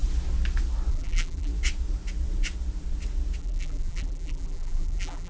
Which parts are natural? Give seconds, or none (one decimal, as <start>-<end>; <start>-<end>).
0.0-0.9; 1.5-3.4